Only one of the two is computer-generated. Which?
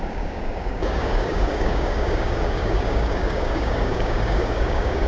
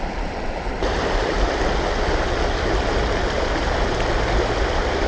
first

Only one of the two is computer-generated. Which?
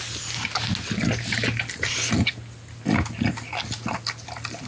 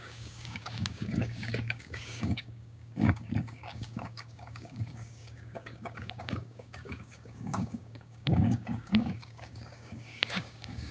second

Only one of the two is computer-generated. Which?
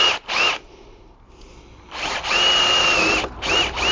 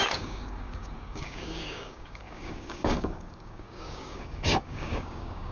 second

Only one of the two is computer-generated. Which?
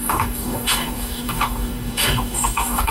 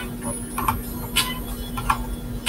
first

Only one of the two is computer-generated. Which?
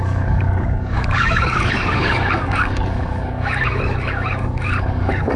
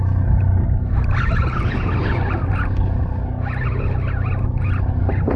first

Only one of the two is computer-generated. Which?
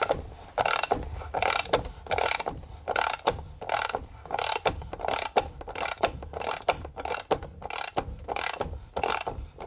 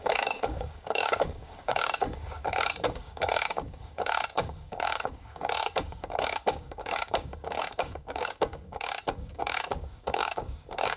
second